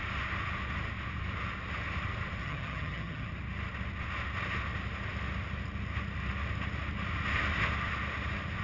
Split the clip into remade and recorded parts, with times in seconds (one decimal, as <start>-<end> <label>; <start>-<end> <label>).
0.0-2.4 recorded; 2.4-3.3 remade; 3.3-8.6 recorded

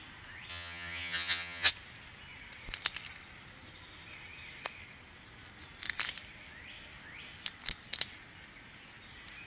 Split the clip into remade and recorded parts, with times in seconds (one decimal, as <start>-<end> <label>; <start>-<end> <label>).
0.0-0.5 recorded; 0.5-1.7 remade; 1.7-9.5 recorded

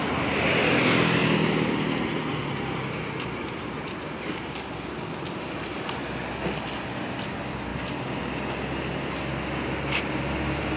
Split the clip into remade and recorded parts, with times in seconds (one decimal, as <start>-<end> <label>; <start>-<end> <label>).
0.0-10.8 recorded

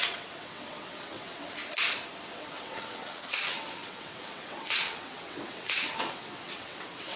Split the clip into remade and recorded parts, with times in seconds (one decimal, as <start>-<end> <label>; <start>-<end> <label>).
0.0-1.6 remade; 1.6-2.3 recorded; 2.3-7.2 remade

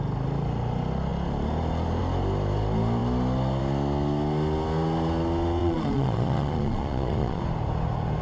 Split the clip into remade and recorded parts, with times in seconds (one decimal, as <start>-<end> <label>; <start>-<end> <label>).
0.0-5.6 recorded; 5.6-7.4 remade; 7.4-8.2 recorded

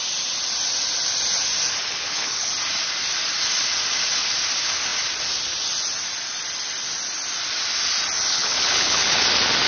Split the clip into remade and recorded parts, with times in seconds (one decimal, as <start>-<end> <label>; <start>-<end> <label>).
0.0-1.8 recorded; 1.8-2.5 remade; 2.5-8.3 recorded; 8.3-9.2 remade; 9.2-9.7 recorded

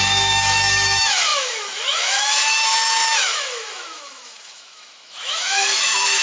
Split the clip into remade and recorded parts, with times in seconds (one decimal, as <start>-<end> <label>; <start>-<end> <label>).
0.0-6.2 remade

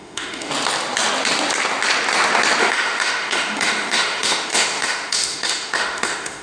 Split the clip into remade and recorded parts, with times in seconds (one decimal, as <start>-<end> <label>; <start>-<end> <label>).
0.0-0.5 remade; 0.5-2.6 recorded; 2.6-6.4 remade